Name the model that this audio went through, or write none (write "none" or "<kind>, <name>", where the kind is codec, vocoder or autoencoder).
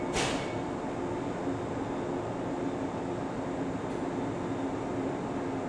none